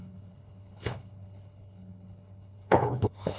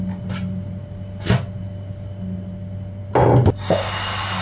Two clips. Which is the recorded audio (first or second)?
second